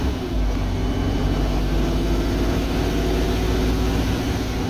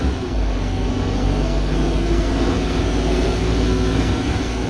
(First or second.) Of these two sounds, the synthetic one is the second